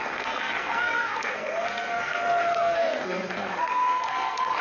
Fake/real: fake